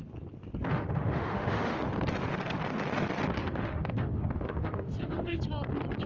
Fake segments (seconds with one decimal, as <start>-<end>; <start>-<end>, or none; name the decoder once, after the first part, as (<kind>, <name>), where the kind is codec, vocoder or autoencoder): 0.7-1.8 (autoencoder, DAC-VAE); 3.4-5.4